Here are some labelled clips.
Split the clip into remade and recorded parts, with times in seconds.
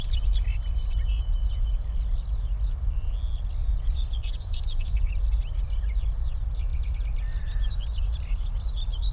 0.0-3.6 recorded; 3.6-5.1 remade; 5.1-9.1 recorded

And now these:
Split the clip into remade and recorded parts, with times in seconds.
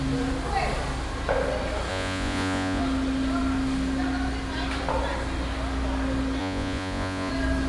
0.0-1.9 recorded; 1.9-2.8 remade; 2.8-6.4 recorded; 6.4-7.3 remade; 7.3-7.7 recorded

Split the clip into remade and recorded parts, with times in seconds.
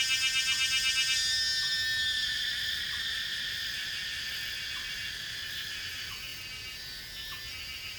0.0-8.0 recorded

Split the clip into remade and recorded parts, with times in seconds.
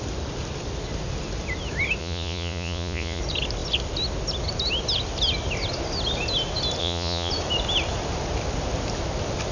0.0-2.0 recorded; 2.0-3.2 remade; 3.2-6.8 recorded; 6.8-7.3 remade; 7.3-9.5 recorded